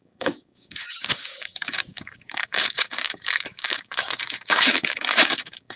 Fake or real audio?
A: fake